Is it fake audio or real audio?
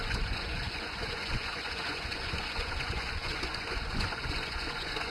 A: fake